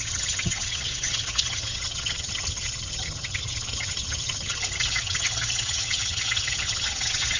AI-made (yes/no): yes